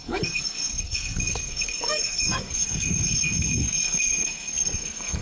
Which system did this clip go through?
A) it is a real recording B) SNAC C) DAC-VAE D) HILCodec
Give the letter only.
B